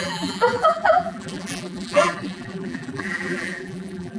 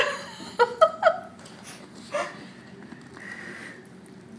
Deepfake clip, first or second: first